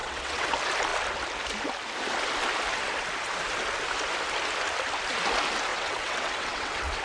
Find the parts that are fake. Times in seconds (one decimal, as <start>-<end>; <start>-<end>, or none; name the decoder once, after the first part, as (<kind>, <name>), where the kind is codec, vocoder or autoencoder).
0.0-0.5 (vocoder, WaveNeXt); 5.7-7.0